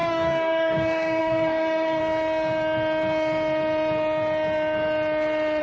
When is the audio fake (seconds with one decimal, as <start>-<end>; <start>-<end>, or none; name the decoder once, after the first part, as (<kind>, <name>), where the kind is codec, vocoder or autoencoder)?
0.0-2.0 (codec, DAC)